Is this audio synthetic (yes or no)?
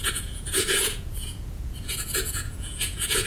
yes